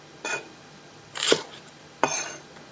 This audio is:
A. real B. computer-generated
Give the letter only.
B